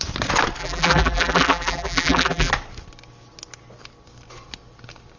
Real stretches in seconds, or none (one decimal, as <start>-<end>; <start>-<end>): 0.0-0.6; 2.5-5.2